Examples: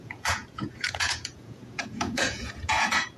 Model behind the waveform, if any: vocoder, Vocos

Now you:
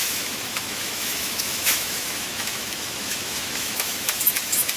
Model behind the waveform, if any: autoencoder, DAC-VAE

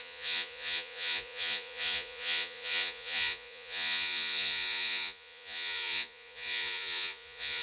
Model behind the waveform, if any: vocoder, Vocos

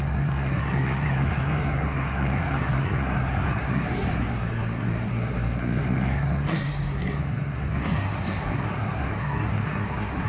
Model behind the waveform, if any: codec, SNAC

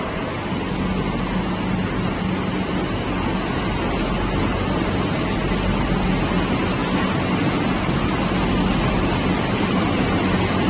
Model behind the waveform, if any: none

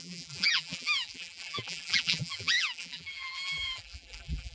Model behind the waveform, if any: vocoder, BigVGAN v2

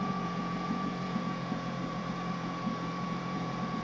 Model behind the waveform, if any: vocoder, Vocos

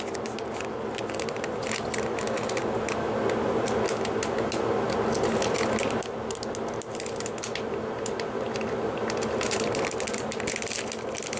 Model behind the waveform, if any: none